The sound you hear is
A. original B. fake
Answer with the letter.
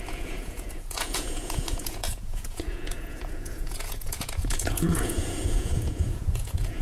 B